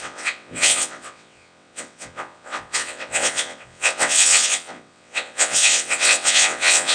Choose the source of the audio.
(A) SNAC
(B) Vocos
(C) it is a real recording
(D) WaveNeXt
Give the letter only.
D